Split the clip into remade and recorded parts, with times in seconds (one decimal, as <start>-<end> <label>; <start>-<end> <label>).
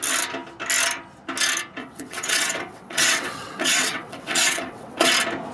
0.0-1.8 recorded; 1.8-5.1 remade; 5.1-5.5 recorded